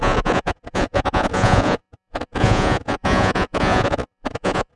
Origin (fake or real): fake